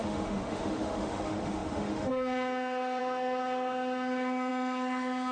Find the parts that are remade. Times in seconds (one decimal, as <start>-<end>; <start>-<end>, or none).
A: 0.0-5.3